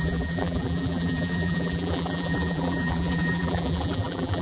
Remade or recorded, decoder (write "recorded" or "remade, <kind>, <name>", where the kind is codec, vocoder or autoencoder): remade, vocoder, BigVGAN v2